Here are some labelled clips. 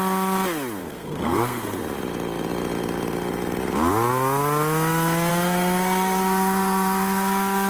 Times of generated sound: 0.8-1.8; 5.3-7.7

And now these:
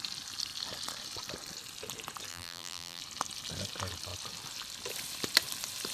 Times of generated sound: 2.3-3.0